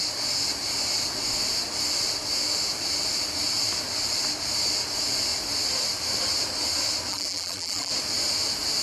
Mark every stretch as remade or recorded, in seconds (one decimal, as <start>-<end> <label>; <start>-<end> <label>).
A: 0.0-7.1 recorded; 7.1-7.9 remade; 7.9-8.8 recorded